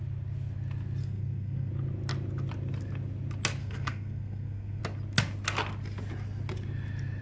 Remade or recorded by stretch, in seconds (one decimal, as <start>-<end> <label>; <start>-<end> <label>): 0.0-1.0 recorded; 1.0-1.7 remade; 1.7-3.6 recorded; 3.6-4.8 remade; 4.8-7.2 recorded

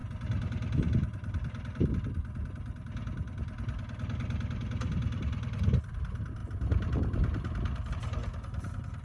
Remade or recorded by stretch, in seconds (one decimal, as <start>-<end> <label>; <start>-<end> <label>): 0.0-6.4 recorded; 6.4-7.9 remade; 7.9-9.0 recorded

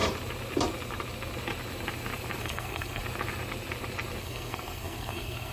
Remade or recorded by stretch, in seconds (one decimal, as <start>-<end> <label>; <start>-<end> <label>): 0.0-2.4 recorded; 2.4-3.0 remade; 3.0-4.2 recorded; 4.2-5.5 remade

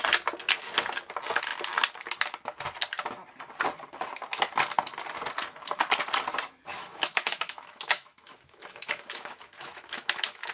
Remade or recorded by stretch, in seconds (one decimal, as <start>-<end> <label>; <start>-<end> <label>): 0.0-6.7 recorded; 6.7-10.5 remade

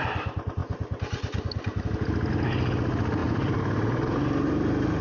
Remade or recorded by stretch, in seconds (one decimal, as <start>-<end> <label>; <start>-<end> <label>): 0.0-3.2 recorded; 3.2-5.0 remade

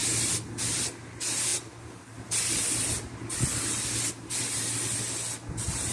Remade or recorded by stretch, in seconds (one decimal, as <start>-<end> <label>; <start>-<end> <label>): 0.0-5.9 recorded

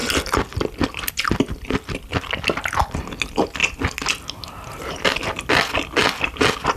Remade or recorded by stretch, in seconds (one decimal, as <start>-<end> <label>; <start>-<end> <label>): 0.0-6.8 recorded

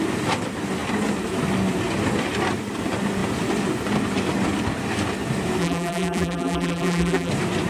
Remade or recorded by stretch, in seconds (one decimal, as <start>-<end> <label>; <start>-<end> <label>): 0.0-5.6 recorded; 5.6-7.3 remade; 7.3-7.7 recorded